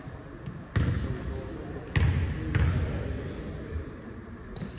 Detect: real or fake real